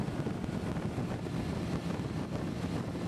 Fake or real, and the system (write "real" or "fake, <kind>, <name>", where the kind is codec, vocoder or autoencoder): real